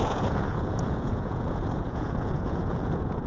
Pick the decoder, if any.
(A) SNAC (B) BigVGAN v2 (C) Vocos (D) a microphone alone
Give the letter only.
C